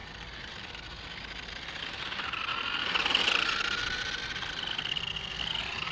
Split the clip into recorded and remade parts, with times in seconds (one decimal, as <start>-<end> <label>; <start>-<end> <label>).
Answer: 0.0-5.9 recorded

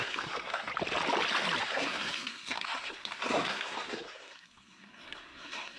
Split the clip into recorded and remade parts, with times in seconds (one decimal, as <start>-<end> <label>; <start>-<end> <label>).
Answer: 0.0-0.7 remade; 0.7-1.6 recorded; 1.6-5.8 remade

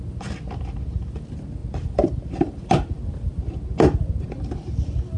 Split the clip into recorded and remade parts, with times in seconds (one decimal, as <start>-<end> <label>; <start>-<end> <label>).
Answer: 0.0-5.2 recorded

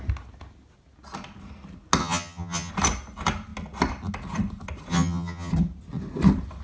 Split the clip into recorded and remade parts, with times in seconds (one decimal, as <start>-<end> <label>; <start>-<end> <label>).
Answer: 0.0-2.0 recorded; 2.0-2.7 remade; 2.7-4.9 recorded; 4.9-5.5 remade; 5.5-6.6 recorded

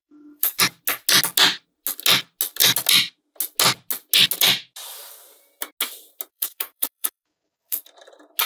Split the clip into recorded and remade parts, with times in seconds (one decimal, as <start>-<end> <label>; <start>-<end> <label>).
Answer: 0.0-0.6 remade; 0.6-6.3 recorded; 6.3-7.8 remade; 7.8-8.5 recorded

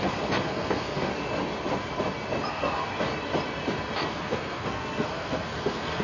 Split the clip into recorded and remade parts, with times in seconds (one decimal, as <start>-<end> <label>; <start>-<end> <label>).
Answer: 0.0-1.1 remade; 1.1-2.5 recorded; 2.5-2.9 remade; 2.9-4.1 recorded; 4.1-6.0 remade

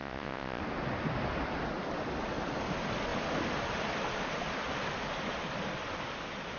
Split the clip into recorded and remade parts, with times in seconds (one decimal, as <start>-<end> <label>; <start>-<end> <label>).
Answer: 0.0-0.6 remade; 0.6-6.6 recorded